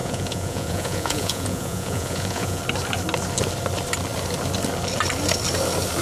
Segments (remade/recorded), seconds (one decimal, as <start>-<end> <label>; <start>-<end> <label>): 0.0-2.6 remade; 2.6-6.0 recorded

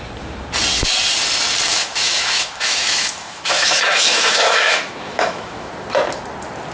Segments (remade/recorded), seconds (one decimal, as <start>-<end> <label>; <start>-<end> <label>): 0.0-1.7 recorded; 1.7-5.7 remade; 5.7-6.7 recorded